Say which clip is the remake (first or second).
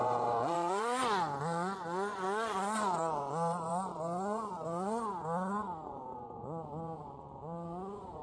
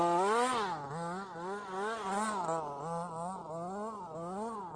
first